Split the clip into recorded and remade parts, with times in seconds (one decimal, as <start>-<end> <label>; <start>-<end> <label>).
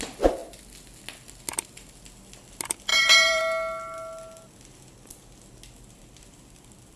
0.0-2.9 recorded; 2.9-3.4 remade; 3.4-7.0 recorded